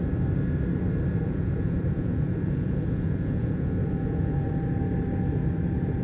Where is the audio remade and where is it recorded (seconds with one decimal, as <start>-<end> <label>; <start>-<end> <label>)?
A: 0.0-1.2 recorded; 1.2-4.5 remade; 4.5-6.0 recorded